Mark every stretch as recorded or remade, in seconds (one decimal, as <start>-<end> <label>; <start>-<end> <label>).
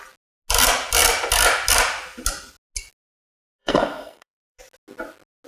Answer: 0.0-3.6 recorded; 3.6-4.6 remade; 4.6-5.5 recorded